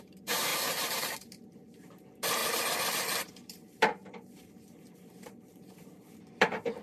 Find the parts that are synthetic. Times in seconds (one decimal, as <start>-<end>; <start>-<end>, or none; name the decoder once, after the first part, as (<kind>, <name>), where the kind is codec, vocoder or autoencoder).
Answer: 0.0-2.4 (vocoder, BigVGAN v2); 3.2-6.8